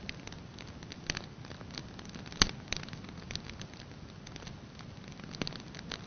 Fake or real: real